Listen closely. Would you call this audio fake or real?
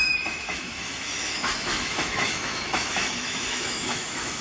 fake